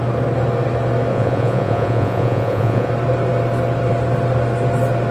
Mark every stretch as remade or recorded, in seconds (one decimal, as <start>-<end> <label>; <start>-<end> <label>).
0.0-1.1 recorded; 1.1-2.9 remade; 2.9-5.1 recorded